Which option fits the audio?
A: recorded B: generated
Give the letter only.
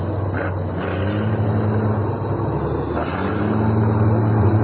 A